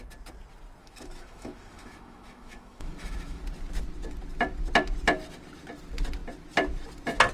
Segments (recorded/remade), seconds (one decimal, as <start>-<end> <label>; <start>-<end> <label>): 0.0-0.8 recorded; 0.8-3.4 remade; 3.4-7.3 recorded